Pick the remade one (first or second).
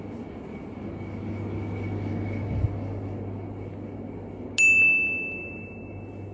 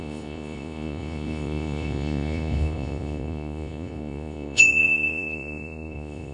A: second